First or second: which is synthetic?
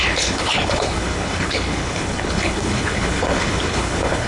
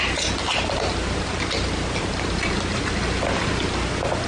first